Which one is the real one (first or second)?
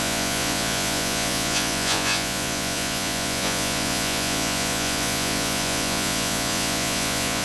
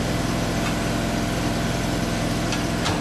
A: second